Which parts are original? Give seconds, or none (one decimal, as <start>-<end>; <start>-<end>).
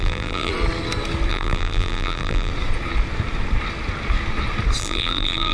0.5-1.3; 2.5-4.8